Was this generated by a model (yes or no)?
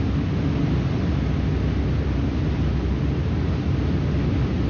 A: no